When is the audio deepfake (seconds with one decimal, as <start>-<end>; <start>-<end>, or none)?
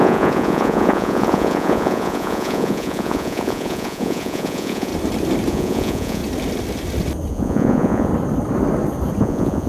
0.0-4.9; 5.5-6.2; 7.3-8.1; 9.2-9.7